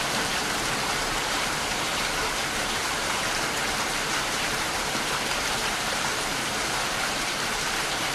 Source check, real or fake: fake